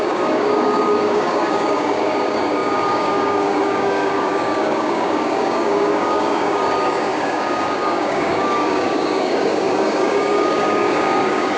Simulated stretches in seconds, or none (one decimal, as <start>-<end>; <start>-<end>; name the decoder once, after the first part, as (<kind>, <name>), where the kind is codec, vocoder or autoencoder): 0.0-11.6 (codec, DAC)